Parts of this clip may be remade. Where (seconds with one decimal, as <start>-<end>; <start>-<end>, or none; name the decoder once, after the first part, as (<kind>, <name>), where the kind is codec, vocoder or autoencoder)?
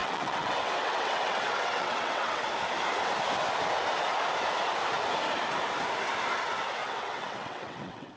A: 0.0-2.5 (vocoder, WaveNeXt); 6.8-8.2